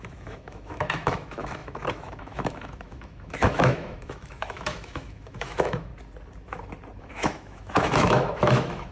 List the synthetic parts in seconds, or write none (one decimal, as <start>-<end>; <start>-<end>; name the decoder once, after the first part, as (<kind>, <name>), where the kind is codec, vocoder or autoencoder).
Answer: 0.0-5.9 (autoencoder, DAC-VAE); 7.0-8.9